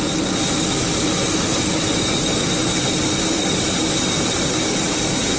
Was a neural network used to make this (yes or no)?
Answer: no